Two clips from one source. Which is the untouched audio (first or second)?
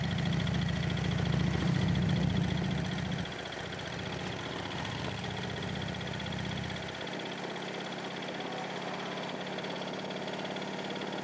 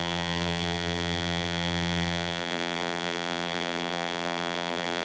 first